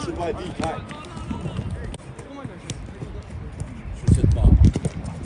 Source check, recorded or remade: recorded